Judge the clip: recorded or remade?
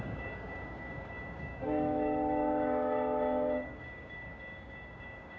remade